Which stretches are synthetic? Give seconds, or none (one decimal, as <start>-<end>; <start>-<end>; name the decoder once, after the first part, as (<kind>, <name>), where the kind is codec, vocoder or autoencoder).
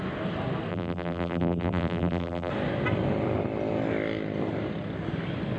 0.7-2.5 (vocoder, BigVGAN v2)